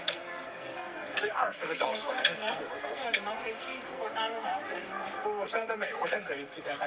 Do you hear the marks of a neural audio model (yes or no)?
yes